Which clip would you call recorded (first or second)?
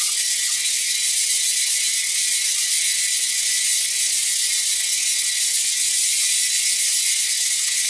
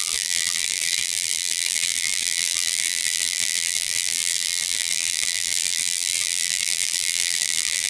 first